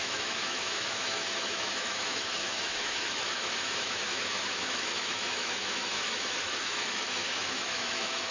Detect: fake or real fake